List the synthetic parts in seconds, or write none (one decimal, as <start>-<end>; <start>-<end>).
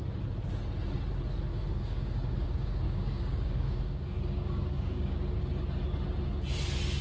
1.5-5.4